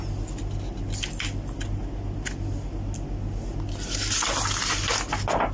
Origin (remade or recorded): recorded